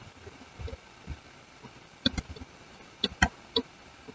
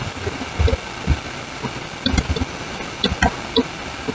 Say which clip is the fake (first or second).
first